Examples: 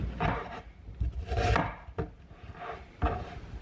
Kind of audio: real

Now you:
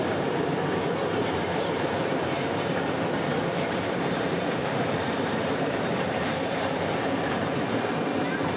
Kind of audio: fake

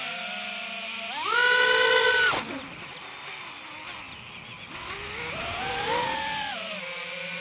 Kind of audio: real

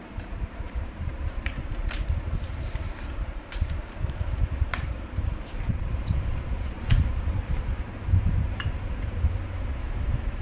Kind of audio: fake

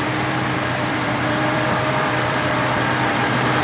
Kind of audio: fake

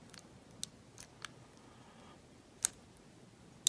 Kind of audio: real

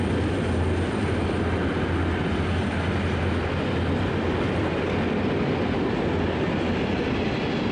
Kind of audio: real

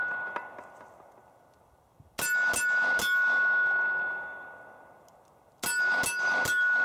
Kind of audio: real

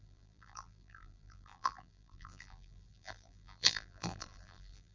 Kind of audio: fake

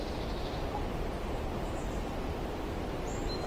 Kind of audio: real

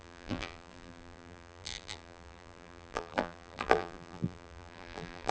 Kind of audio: fake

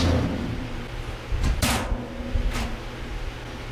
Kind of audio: real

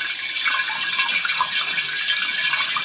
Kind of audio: real